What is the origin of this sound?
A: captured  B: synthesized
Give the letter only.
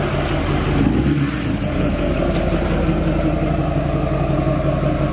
A